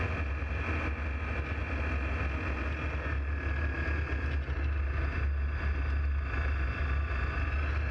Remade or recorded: recorded